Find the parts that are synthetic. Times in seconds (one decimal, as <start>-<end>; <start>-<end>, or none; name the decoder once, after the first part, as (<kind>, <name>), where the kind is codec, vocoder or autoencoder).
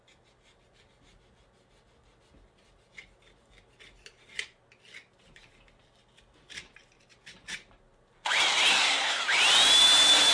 8.7-9.2 (codec, SNAC)